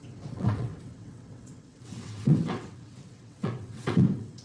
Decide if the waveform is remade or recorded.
remade